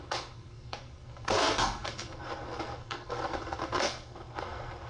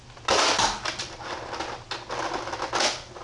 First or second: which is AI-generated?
first